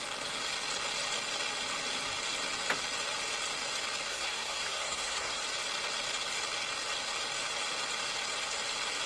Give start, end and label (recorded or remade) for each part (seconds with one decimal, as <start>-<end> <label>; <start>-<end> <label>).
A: 0.0-4.1 recorded; 4.1-5.4 remade; 5.4-9.1 recorded